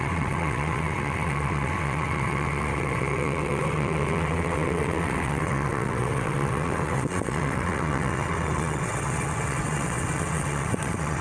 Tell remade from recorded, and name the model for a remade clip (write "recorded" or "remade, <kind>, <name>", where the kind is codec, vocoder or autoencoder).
remade, vocoder, WaveNeXt